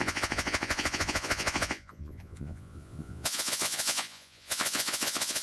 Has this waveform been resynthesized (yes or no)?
yes